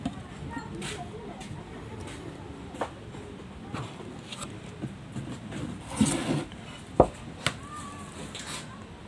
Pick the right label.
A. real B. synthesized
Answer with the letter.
A